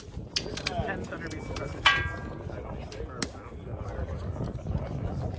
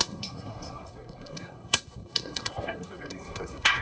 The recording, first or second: first